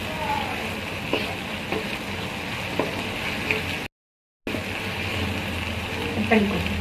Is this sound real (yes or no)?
yes